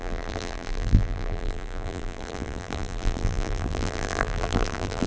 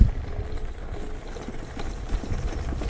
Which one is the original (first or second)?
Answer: second